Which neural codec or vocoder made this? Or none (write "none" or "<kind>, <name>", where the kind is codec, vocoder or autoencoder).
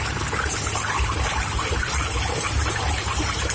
none